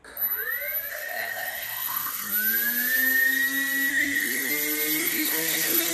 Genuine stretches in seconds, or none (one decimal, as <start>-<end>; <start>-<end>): 0.0-0.9; 2.3-3.9; 4.5-5.0